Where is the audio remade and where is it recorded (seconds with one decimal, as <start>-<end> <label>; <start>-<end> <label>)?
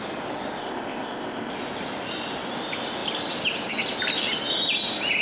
0.0-0.6 recorded; 0.6-1.5 remade; 1.5-5.2 recorded